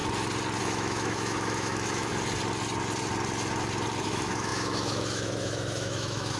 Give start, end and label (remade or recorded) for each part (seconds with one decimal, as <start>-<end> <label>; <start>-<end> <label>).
0.0-0.6 recorded; 0.6-2.1 remade; 2.1-4.0 recorded; 4.0-6.4 remade